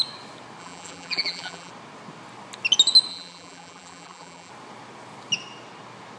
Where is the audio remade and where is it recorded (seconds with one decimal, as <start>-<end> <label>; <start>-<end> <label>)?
0.0-0.6 recorded; 0.6-1.7 remade; 1.7-3.1 recorded; 3.1-4.5 remade; 4.5-6.2 recorded